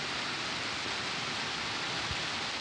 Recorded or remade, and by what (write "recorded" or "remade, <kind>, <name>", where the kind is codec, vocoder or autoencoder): recorded